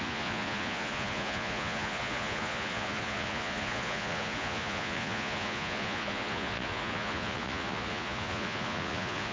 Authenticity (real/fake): fake